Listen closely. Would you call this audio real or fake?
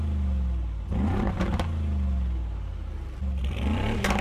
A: real